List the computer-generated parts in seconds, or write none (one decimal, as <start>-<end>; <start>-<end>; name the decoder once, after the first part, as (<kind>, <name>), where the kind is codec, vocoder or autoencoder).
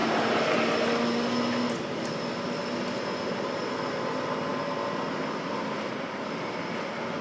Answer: none